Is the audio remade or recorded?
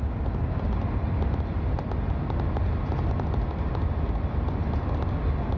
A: recorded